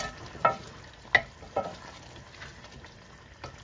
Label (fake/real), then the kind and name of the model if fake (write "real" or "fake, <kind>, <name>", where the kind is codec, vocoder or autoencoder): real